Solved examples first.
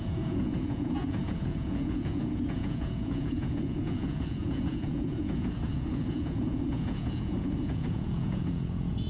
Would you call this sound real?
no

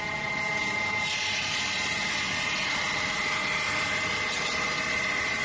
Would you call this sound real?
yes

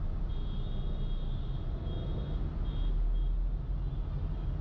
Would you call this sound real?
yes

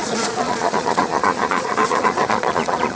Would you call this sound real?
no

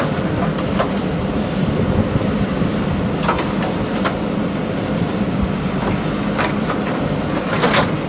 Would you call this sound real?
no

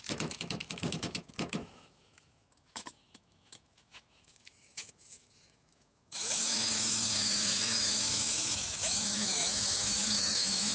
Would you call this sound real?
no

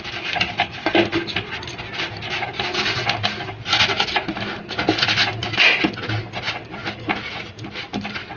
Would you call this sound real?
yes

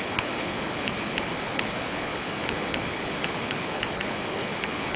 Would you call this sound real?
no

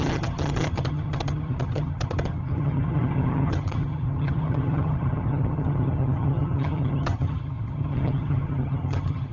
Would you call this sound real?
no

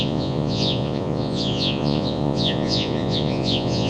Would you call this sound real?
no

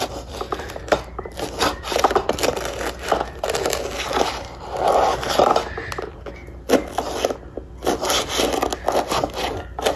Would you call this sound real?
yes